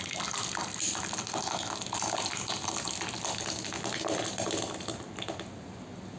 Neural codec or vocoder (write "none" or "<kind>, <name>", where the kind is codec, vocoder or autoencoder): none